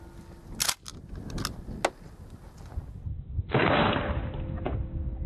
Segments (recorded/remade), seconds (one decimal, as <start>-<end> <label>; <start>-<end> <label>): 0.0-5.3 recorded